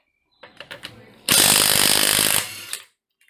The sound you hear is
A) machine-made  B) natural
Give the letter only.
B